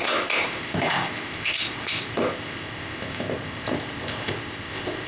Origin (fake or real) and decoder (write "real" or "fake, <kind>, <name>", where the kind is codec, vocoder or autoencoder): fake, codec, ZipCodec